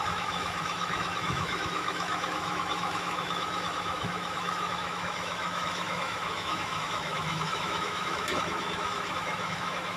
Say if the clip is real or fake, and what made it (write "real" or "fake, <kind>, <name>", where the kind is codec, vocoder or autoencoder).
fake, autoencoder, DAC-VAE